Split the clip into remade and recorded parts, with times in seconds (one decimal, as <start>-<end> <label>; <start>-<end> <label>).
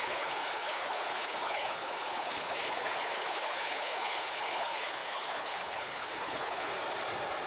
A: 0.0-6.7 remade; 6.7-7.5 recorded